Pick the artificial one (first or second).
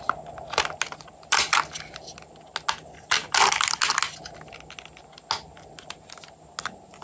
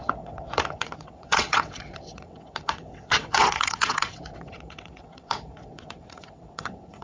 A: second